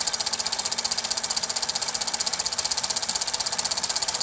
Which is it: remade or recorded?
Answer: recorded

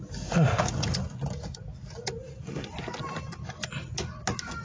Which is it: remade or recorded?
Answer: recorded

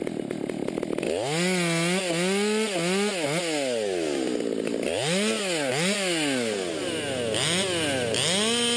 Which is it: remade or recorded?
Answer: recorded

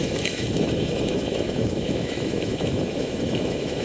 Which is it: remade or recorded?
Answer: remade